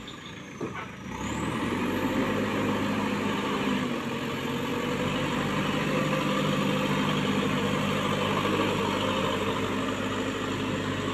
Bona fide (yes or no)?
yes